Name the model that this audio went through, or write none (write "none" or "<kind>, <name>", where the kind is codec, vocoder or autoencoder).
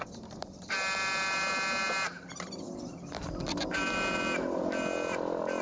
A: none